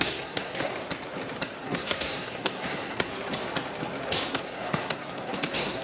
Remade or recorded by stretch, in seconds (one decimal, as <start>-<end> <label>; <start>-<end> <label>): 0.0-0.7 remade; 0.7-1.6 recorded; 1.6-3.1 remade; 3.1-4.3 recorded; 4.3-5.8 remade